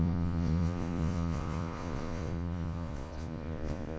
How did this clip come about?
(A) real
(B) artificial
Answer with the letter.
B